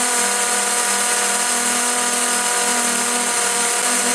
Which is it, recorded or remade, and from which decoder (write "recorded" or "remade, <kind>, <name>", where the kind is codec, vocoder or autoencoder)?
recorded